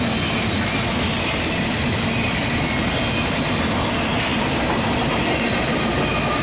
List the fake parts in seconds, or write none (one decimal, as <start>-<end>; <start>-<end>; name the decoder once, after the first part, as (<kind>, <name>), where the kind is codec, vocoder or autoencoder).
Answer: none